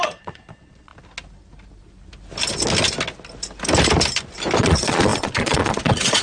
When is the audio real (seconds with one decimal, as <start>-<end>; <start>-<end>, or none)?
0.9-4.6